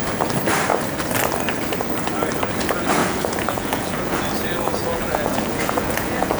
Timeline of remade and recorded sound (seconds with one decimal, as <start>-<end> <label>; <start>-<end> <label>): 0.0-3.0 recorded; 3.0-4.2 remade; 4.2-4.8 recorded; 4.8-6.4 remade